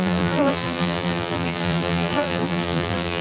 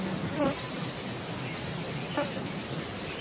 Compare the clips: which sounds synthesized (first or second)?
first